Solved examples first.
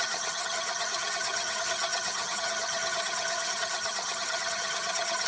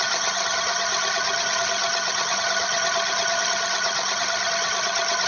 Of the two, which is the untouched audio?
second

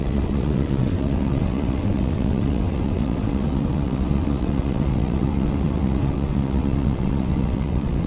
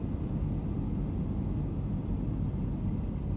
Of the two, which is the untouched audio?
second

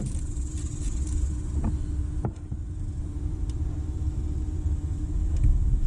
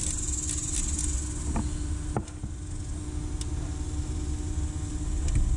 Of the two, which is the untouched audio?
second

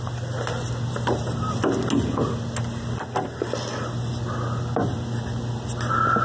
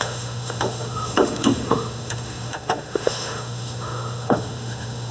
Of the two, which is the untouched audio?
first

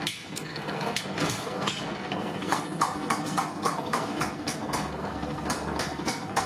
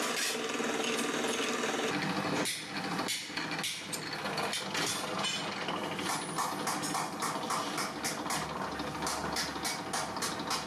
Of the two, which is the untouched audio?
second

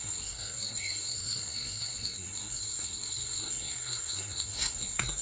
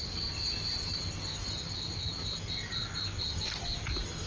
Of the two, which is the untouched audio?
second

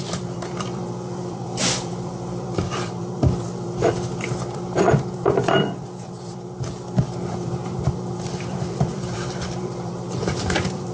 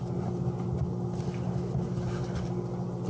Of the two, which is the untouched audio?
second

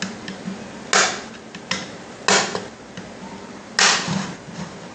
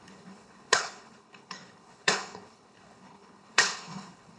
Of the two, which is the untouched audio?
first